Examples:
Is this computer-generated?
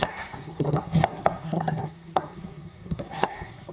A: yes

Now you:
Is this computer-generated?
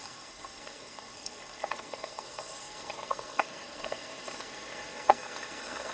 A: yes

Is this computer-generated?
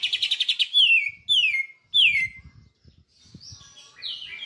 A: no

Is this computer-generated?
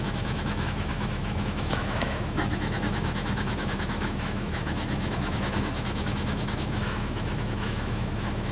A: yes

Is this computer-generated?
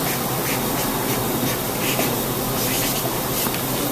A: no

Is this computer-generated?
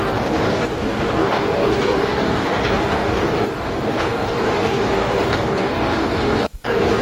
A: yes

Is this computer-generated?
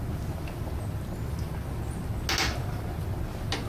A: no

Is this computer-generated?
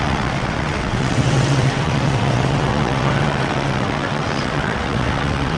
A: yes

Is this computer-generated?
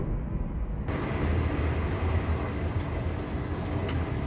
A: no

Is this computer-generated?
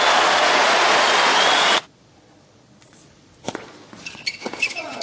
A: yes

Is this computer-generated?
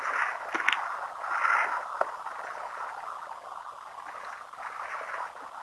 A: no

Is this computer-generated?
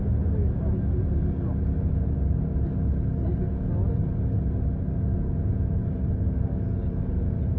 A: no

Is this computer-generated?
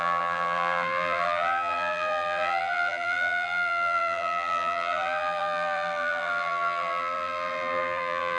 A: yes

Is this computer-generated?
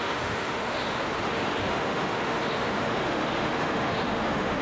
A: yes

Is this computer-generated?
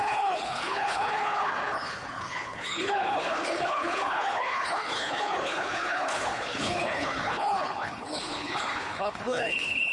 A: yes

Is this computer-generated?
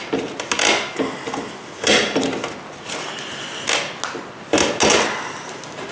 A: no